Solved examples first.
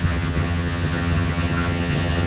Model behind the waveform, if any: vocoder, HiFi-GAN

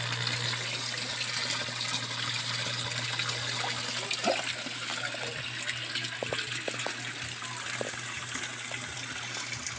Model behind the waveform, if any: none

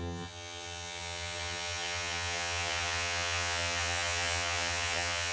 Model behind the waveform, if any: vocoder, HiFi-GAN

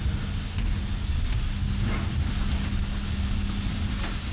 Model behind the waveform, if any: none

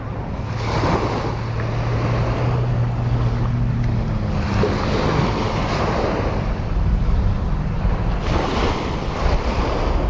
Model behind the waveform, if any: none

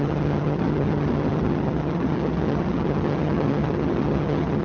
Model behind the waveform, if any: vocoder, HiFi-GAN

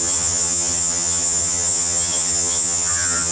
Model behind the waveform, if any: vocoder, HiFi-GAN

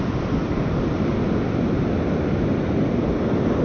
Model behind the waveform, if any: none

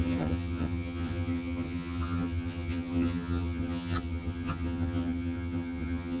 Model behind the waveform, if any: vocoder, HiFi-GAN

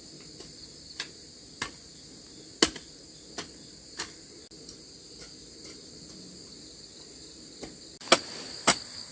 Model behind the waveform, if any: none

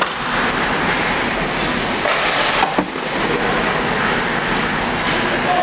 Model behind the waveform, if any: none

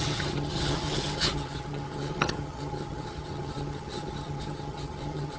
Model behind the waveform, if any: vocoder, HiFi-GAN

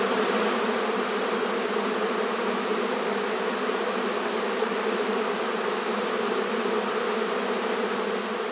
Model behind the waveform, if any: none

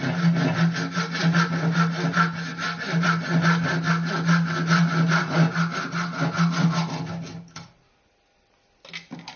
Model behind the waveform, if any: none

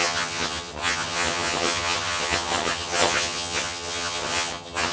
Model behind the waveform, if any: vocoder, HiFi-GAN